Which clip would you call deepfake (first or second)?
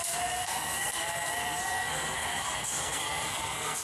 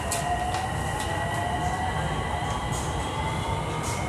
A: first